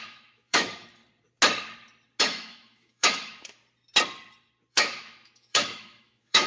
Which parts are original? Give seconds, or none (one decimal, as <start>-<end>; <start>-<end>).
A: 1.0-2.2; 3.6-4.7